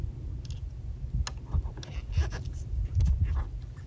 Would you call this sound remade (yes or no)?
no